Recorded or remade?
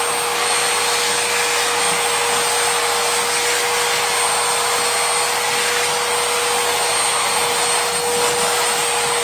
recorded